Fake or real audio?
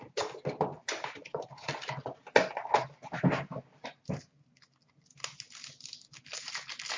real